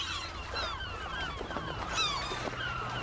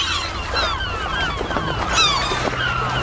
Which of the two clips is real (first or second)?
second